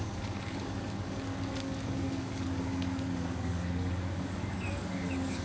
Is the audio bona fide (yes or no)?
no